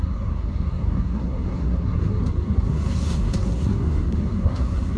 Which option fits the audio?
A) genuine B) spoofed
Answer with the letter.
B